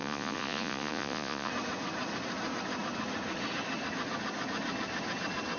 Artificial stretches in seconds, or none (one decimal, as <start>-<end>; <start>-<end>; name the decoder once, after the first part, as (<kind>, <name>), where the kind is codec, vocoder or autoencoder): 0.0-1.5 (vocoder, Vocos)